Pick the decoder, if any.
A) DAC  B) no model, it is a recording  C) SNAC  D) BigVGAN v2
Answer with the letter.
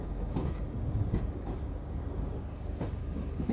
A